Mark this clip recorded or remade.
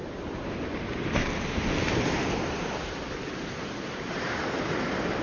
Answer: recorded